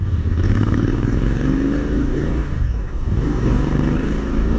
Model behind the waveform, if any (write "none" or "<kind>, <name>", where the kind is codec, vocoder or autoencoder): codec, DAC